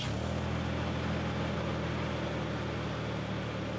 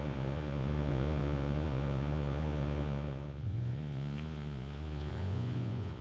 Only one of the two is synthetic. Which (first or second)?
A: second